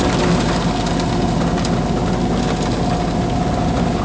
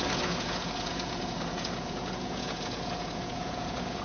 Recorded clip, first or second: first